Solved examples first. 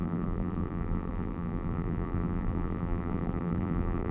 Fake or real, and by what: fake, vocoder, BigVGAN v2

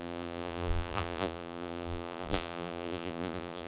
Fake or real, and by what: fake, vocoder, BigVGAN v2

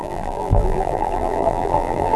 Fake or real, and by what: fake, vocoder, BigVGAN v2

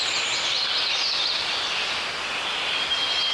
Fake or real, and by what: real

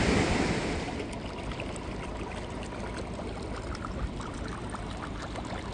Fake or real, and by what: real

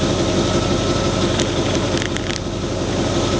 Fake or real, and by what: real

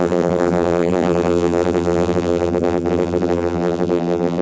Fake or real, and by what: fake, vocoder, BigVGAN v2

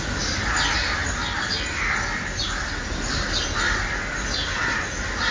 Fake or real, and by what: real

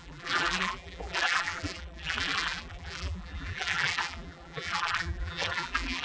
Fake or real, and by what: fake, vocoder, BigVGAN v2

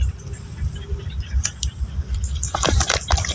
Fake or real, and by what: fake, vocoder, BigVGAN v2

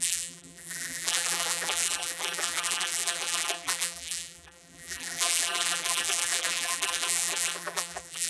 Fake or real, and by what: fake, vocoder, BigVGAN v2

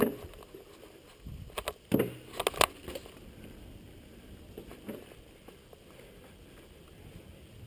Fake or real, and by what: real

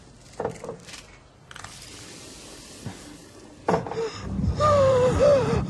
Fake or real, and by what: fake, vocoder, BigVGAN v2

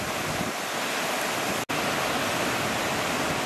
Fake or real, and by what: real